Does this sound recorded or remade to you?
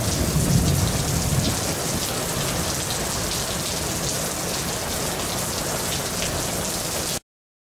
recorded